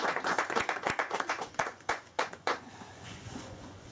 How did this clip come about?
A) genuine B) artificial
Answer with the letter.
B